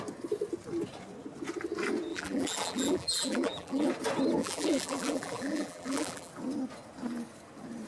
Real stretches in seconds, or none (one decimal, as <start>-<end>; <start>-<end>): 0.0-2.1; 3.9-4.4; 6.3-7.9